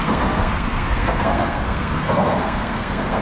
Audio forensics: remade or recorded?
remade